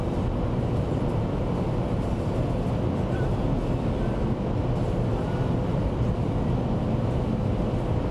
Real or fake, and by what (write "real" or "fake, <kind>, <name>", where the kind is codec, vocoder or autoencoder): real